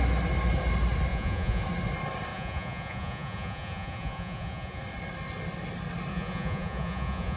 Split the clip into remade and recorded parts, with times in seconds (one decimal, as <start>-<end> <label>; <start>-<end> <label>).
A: 0.0-1.1 recorded; 1.1-1.6 remade; 1.6-2.3 recorded; 2.3-4.8 remade; 4.8-6.1 recorded; 6.1-7.4 remade